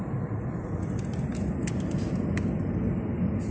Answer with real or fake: real